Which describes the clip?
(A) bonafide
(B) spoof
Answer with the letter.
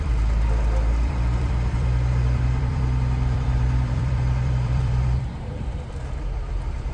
B